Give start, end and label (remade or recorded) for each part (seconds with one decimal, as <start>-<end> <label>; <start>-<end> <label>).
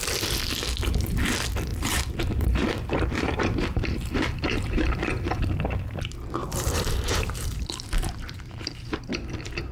0.0-1.7 recorded; 1.7-5.3 remade; 5.3-6.4 recorded; 6.4-9.1 remade; 9.1-9.7 recorded